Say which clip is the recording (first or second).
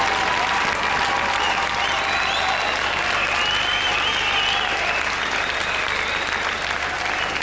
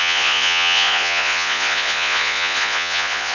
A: first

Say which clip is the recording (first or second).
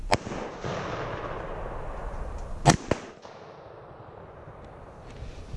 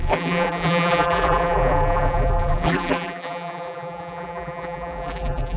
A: first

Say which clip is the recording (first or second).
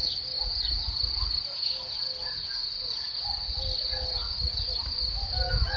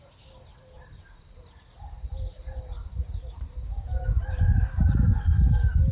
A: first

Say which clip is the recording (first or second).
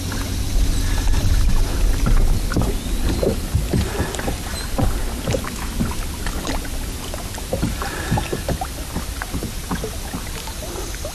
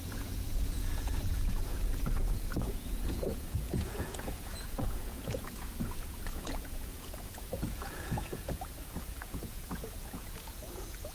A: first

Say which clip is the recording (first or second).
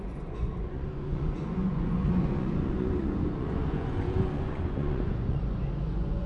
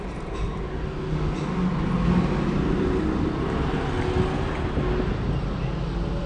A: second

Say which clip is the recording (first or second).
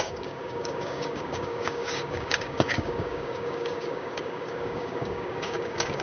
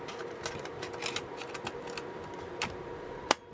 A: second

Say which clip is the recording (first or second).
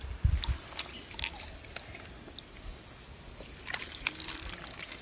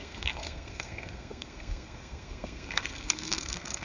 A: first